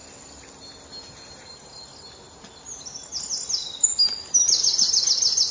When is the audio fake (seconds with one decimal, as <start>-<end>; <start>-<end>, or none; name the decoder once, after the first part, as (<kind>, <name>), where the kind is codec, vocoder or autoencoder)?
4.2-5.0 (vocoder, BigVGAN v2)